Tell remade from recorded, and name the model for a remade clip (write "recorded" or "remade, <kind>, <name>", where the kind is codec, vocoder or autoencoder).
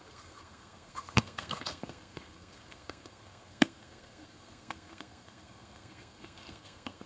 remade, codec, SNAC